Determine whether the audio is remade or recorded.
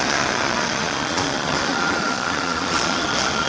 remade